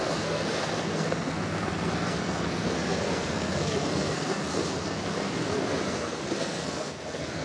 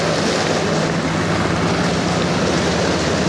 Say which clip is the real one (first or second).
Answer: second